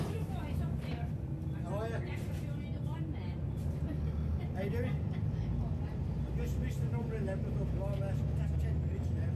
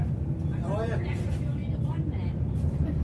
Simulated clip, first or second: second